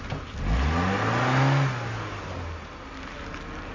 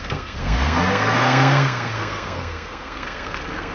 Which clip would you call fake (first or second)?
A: second